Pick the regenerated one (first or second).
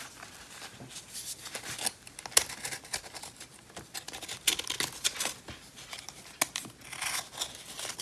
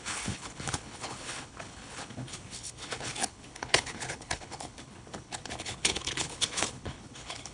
second